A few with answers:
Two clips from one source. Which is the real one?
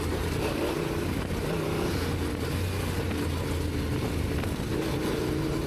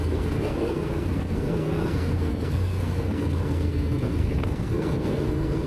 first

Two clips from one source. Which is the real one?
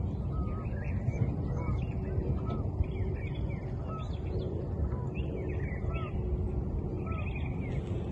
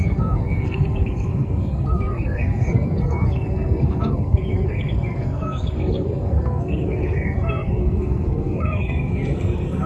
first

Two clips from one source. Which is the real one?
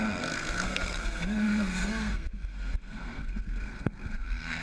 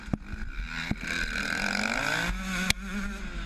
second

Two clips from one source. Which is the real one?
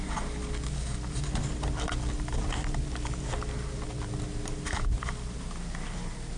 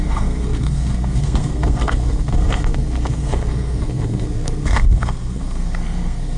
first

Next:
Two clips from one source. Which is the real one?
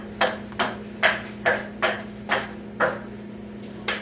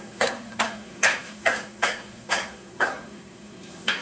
first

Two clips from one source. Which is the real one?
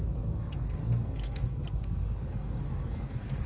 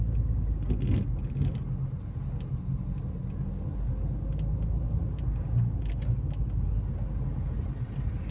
second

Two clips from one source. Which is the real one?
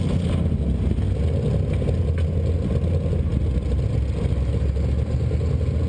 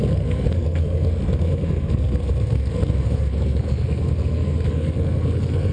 first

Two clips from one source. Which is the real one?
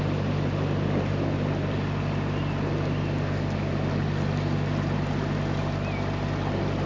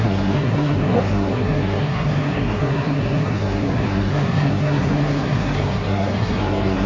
first